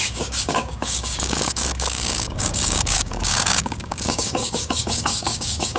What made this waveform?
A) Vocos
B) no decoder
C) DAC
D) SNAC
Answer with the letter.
C